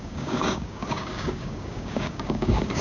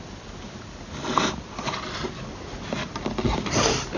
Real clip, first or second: second